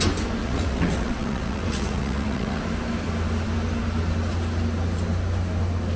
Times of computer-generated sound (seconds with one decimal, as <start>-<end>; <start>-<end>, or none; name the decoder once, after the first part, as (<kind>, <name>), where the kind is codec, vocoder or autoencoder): 0.4-2.6 (vocoder, WaveNeXt)